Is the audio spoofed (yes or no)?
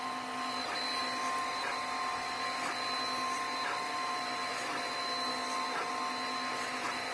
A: no